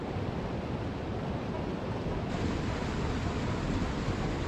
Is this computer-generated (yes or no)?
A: no